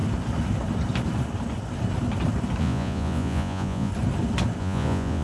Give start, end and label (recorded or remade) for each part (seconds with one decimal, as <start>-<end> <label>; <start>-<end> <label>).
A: 0.0-2.6 recorded; 2.6-3.9 remade; 3.9-4.6 recorded; 4.6-5.2 remade